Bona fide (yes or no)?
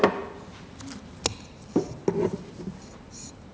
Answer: yes